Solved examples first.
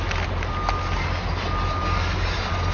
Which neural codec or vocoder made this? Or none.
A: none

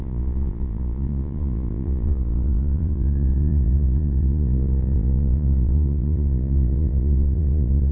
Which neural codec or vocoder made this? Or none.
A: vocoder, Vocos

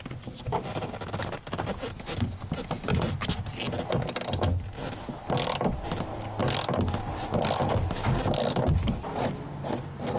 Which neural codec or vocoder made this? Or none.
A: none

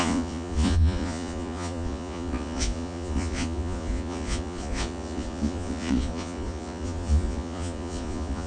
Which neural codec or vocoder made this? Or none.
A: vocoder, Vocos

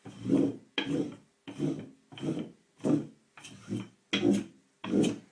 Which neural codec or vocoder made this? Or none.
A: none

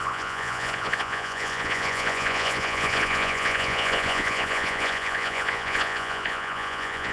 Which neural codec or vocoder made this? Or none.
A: vocoder, Vocos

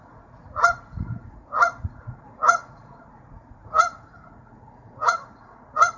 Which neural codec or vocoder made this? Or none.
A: vocoder, Vocos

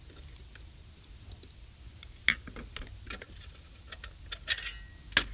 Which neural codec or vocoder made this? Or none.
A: none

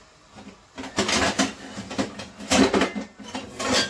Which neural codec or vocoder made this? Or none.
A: none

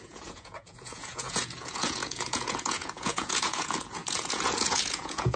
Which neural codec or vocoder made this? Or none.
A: vocoder, Vocos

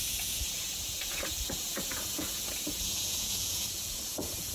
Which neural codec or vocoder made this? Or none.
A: vocoder, Vocos